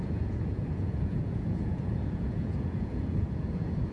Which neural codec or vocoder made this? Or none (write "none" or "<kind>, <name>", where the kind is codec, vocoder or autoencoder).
vocoder, Vocos